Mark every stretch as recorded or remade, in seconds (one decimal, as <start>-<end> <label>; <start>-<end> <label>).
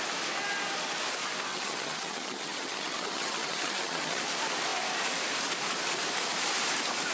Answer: 0.0-1.5 recorded; 1.5-4.2 remade; 4.2-7.1 recorded